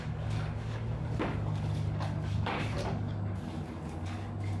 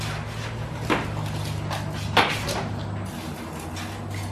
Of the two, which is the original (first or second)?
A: second